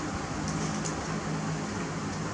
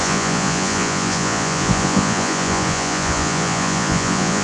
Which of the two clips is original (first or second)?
first